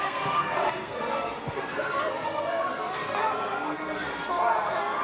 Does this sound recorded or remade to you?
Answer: remade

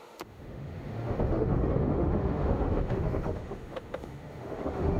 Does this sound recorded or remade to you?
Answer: remade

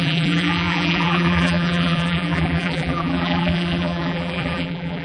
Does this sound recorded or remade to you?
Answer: remade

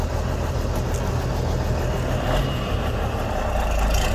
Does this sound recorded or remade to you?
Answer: recorded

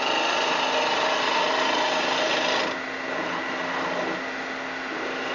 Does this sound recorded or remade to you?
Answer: recorded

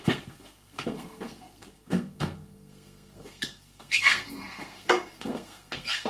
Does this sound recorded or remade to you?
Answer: remade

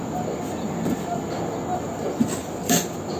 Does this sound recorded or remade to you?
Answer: recorded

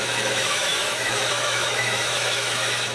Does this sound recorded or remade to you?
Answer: remade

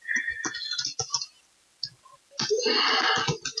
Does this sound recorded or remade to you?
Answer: recorded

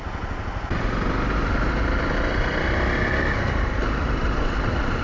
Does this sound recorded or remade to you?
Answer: recorded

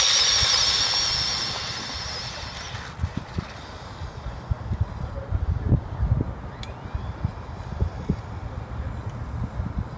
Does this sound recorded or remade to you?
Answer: recorded